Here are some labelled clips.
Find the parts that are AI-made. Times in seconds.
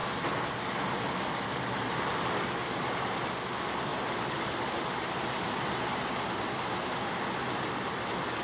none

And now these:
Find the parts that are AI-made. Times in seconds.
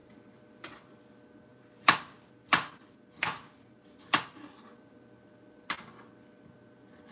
0.0-1.0; 1.5-4.9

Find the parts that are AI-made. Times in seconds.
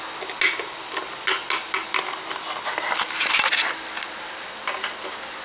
none